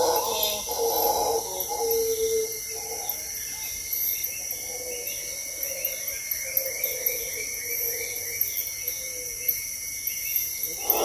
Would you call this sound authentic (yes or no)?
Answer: yes